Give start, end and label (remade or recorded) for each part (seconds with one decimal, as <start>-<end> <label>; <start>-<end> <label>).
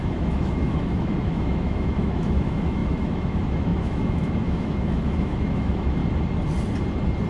0.0-6.0 remade; 6.0-7.3 recorded